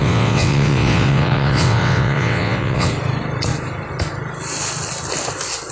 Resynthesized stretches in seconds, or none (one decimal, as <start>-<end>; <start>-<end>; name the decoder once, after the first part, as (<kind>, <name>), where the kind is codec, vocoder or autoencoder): 0.0-2.9 (vocoder, WaveNeXt)